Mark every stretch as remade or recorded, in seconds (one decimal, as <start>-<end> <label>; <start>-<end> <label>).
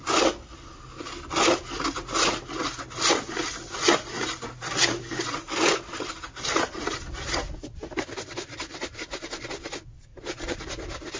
0.0-10.1 recorded; 10.1-10.6 remade; 10.6-11.2 recorded